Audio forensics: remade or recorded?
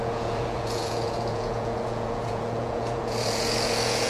remade